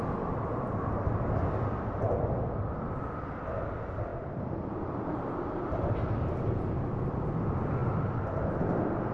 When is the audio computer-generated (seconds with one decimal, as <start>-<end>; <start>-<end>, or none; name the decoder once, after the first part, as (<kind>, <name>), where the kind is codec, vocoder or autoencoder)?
none